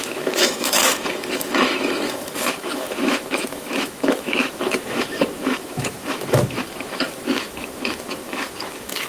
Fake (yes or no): yes